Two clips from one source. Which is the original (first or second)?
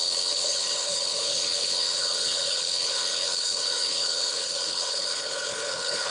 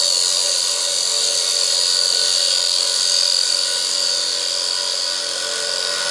second